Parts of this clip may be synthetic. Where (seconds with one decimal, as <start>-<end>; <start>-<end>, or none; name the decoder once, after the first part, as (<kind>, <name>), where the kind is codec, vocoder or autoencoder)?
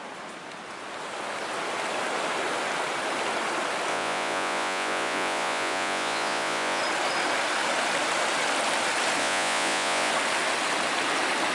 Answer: 3.9-6.8 (vocoder, Vocos); 9.2-10.1